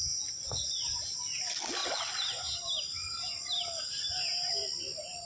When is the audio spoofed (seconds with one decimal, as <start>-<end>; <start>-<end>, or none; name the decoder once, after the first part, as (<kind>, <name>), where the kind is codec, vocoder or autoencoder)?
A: 0.0-1.0 (vocoder, Vocos)